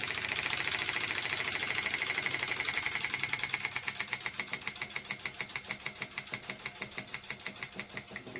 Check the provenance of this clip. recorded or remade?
recorded